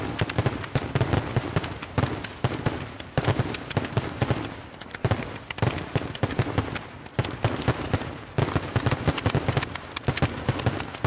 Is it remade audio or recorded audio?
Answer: recorded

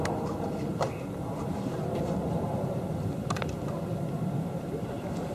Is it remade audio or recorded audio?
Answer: remade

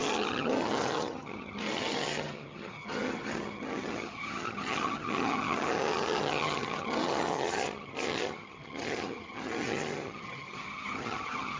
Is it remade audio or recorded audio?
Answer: remade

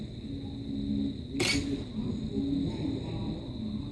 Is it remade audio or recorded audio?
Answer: recorded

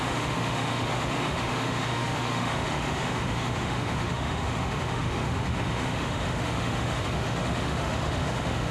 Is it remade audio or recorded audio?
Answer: remade